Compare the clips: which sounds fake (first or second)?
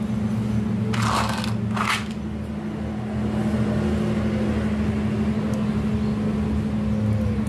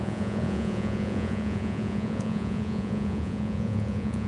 second